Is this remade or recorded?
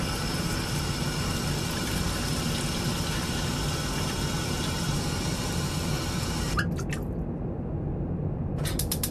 recorded